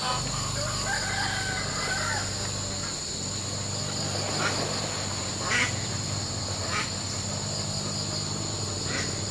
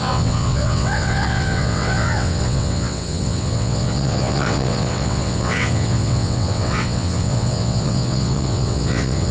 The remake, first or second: second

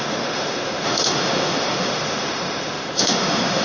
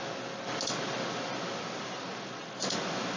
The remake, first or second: first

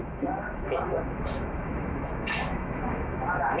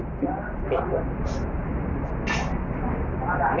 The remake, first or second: first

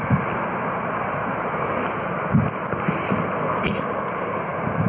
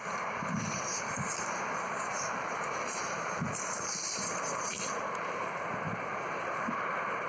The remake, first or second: second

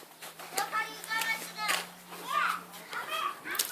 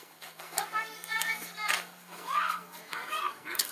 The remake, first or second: second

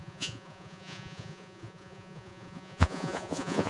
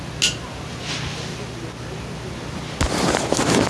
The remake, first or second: first